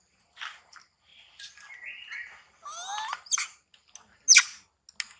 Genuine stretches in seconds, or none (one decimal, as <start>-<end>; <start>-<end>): 0.0-5.2